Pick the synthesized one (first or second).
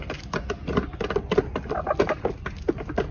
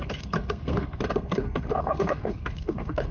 second